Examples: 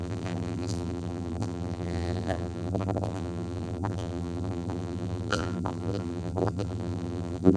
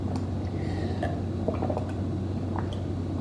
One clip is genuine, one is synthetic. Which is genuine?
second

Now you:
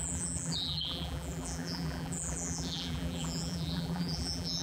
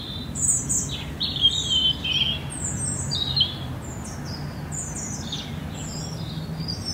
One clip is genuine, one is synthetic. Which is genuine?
second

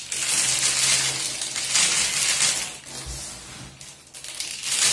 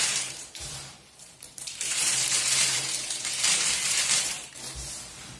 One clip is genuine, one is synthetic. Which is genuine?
first